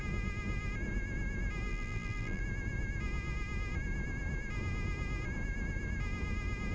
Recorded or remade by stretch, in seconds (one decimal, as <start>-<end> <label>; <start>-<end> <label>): 0.0-1.7 recorded; 1.7-2.4 remade; 2.4-6.7 recorded